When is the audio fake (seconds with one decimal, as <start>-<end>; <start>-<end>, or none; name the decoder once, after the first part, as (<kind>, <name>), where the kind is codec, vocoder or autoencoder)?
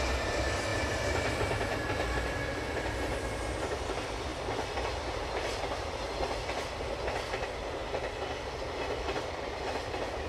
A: none